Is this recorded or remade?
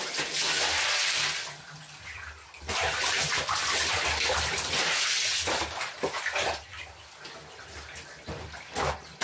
recorded